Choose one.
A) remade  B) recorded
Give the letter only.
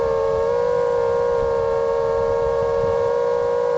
B